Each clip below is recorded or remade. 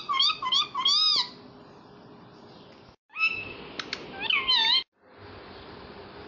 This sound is recorded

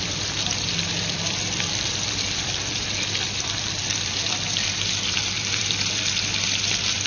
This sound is remade